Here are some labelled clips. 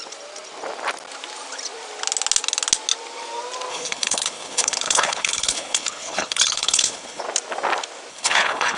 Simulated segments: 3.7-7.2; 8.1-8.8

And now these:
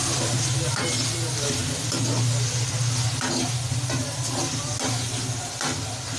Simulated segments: none

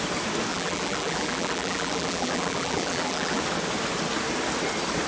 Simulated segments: 0.5-3.4

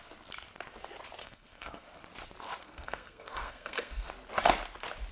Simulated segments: 1.2-2.0; 2.6-4.1

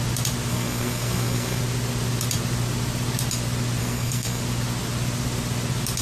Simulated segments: 0.5-1.6; 3.8-4.4

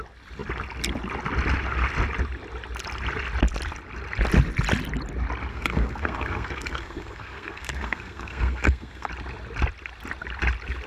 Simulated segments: 5.5-9.1

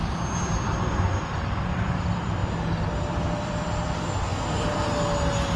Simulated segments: 1.7-2.4; 3.0-4.3